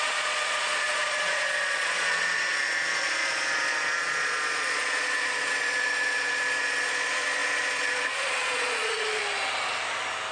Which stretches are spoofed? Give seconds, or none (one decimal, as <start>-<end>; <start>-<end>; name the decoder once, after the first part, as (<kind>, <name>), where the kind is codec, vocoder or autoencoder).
0.0-9.2 (vocoder, Vocos)

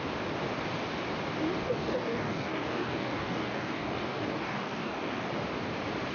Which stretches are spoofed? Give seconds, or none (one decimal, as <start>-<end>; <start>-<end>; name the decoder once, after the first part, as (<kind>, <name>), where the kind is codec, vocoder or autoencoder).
1.6-5.3 (codec, DAC)

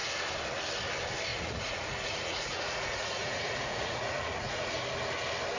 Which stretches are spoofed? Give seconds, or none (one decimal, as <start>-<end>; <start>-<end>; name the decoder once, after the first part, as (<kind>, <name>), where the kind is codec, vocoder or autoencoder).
1.3-4.7 (vocoder, Vocos)

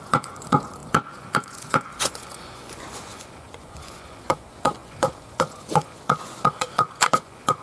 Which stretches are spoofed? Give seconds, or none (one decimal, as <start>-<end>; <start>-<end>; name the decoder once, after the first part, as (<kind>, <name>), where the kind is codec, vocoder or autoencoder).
0.0-7.6 (vocoder, Vocos)

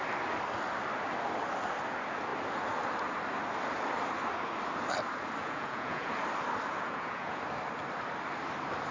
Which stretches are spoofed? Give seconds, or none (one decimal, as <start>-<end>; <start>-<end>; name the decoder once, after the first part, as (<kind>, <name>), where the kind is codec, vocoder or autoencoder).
5.4-6.1 (vocoder, Vocos); 6.7-7.4